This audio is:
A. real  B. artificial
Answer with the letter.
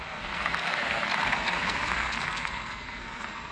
B